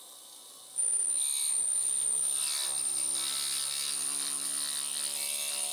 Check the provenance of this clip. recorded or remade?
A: recorded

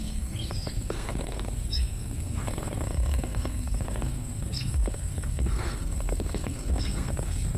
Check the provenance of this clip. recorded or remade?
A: remade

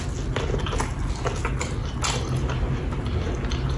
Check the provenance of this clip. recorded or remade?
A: recorded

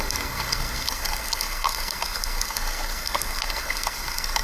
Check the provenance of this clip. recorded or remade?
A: remade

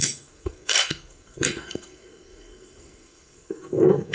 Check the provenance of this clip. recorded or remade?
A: remade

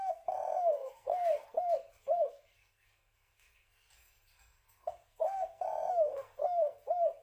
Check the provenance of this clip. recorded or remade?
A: remade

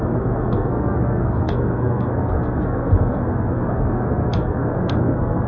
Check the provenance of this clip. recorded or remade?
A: remade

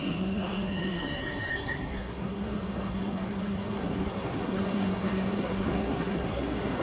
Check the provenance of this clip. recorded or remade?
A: remade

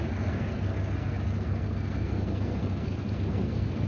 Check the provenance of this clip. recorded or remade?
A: remade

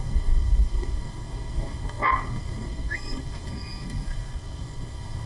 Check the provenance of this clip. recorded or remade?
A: remade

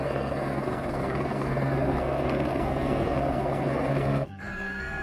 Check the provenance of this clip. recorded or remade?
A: remade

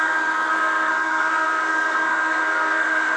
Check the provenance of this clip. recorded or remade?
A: remade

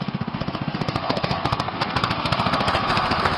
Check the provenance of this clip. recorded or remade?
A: remade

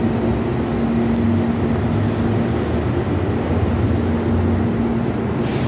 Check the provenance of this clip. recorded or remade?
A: recorded